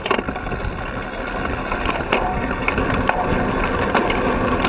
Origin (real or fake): real